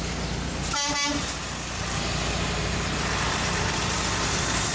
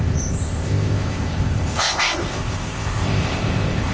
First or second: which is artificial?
second